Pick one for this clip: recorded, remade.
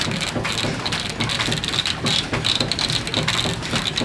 recorded